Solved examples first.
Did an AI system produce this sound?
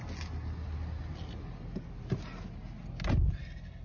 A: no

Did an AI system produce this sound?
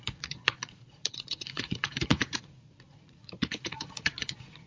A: yes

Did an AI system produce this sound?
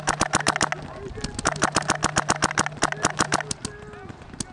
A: no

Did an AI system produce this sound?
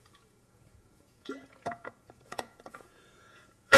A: yes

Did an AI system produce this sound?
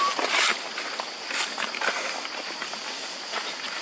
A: no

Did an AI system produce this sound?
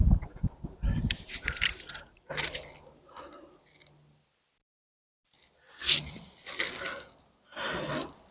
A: no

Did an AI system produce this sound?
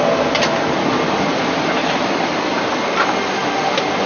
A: no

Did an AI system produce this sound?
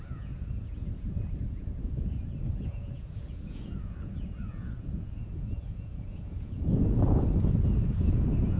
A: yes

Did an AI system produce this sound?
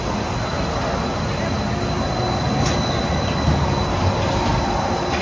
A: no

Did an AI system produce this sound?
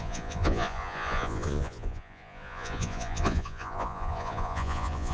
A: yes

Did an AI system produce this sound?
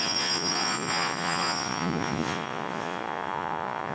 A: yes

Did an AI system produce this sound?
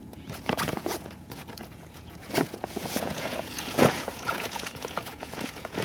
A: yes